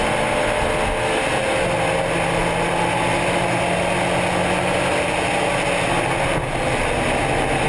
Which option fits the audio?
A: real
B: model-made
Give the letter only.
A